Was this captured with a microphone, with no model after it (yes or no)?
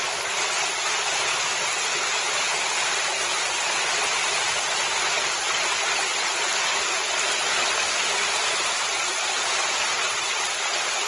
yes